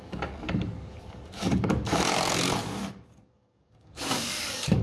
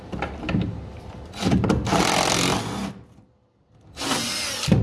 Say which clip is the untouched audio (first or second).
second